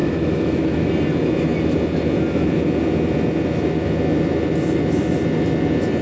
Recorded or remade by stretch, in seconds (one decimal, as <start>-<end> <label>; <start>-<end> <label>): 0.0-0.9 remade; 0.9-6.0 recorded